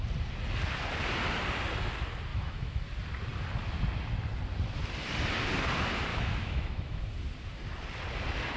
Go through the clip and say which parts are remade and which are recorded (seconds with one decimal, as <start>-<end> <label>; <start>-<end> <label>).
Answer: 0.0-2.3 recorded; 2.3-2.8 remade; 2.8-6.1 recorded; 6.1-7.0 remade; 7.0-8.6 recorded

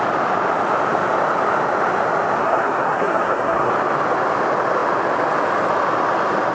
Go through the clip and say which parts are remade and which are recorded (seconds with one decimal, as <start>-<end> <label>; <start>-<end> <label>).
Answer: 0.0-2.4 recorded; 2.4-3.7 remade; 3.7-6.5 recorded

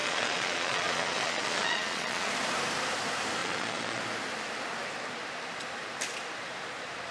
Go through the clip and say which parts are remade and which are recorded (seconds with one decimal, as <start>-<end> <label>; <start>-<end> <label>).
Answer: 0.0-2.3 remade; 2.3-3.4 recorded; 3.4-4.0 remade; 4.0-7.1 recorded

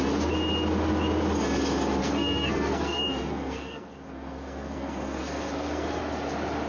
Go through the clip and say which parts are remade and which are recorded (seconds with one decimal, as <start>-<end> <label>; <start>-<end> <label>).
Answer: 0.0-2.0 recorded; 2.0-6.0 remade; 6.0-6.7 recorded

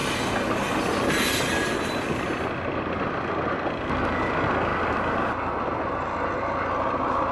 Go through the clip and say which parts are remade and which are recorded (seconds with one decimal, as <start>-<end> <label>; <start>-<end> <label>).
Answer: 0.0-7.3 recorded

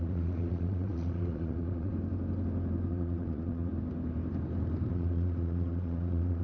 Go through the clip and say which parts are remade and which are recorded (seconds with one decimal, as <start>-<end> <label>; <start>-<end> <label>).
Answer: 0.0-1.9 remade; 1.9-2.9 recorded; 2.9-3.7 remade; 3.7-4.9 recorded; 4.9-6.4 remade

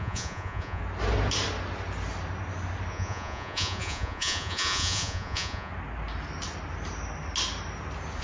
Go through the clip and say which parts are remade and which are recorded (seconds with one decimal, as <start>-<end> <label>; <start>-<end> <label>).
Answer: 0.0-0.8 remade; 0.8-2.9 recorded; 2.9-5.7 remade; 5.7-8.2 recorded

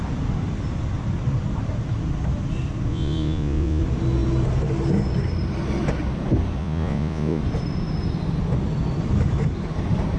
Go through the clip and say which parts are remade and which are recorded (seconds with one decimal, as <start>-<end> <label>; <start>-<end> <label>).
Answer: 0.0-2.9 recorded; 2.9-3.8 remade; 3.8-6.6 recorded; 6.6-7.4 remade; 7.4-10.2 recorded